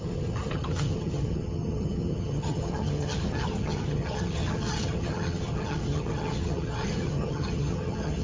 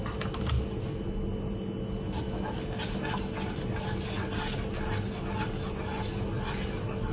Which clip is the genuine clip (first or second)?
second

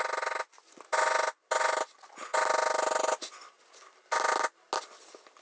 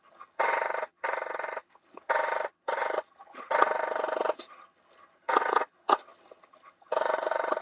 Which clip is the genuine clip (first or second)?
first